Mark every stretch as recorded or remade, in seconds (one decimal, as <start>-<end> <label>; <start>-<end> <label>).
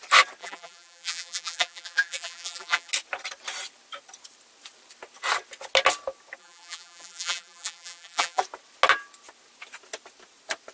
0.0-0.4 recorded; 0.4-2.9 remade; 2.9-6.4 recorded; 6.4-8.4 remade; 8.4-10.7 recorded